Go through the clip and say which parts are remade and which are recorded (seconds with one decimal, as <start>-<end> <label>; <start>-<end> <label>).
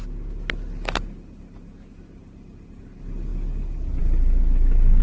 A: 0.0-5.0 recorded